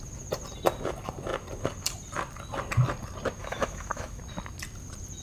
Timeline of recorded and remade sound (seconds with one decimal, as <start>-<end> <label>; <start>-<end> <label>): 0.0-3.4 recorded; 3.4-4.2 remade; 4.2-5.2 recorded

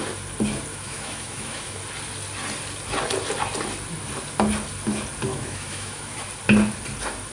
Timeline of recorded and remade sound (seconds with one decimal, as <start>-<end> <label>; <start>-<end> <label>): 0.0-0.7 recorded; 0.7-1.8 remade; 1.8-5.3 recorded; 5.3-6.2 remade; 6.2-7.3 recorded

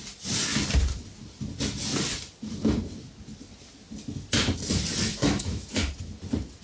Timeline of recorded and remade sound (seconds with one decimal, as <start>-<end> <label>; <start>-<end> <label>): 0.0-5.1 recorded; 5.1-5.9 remade; 5.9-6.6 recorded

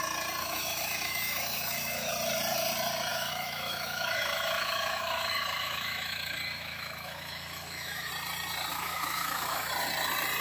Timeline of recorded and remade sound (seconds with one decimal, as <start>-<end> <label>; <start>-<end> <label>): 0.0-0.4 recorded; 0.4-2.1 remade; 2.1-3.1 recorded; 3.1-8.1 remade; 8.1-8.7 recorded; 8.7-9.7 remade; 9.7-10.4 recorded

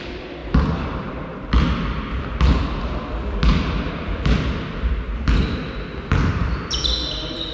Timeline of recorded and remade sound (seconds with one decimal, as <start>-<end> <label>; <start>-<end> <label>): 0.0-7.5 recorded